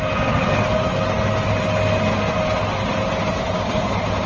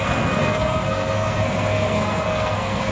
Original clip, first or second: first